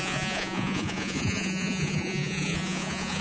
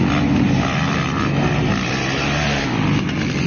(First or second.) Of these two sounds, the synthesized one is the first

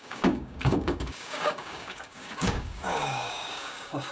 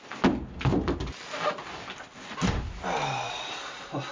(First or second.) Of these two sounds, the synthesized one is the first